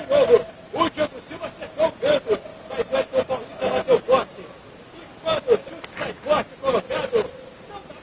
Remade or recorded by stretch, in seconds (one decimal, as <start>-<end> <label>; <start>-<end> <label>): 0.0-8.0 recorded